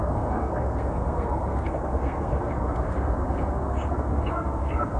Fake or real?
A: fake